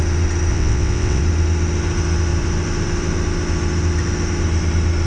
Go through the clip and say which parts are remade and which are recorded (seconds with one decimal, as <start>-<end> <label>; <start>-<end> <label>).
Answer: 0.0-0.5 recorded; 0.5-1.2 remade; 1.2-5.1 recorded